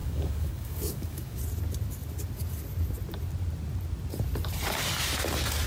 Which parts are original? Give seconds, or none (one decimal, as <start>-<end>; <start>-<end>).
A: 1.4-5.7